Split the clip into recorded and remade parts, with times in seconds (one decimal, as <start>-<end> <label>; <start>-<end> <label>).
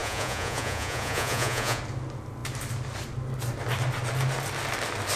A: 0.0-1.8 remade; 1.8-5.2 recorded